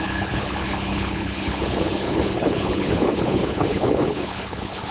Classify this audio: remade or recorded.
remade